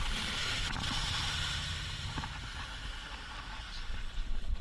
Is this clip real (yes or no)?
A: no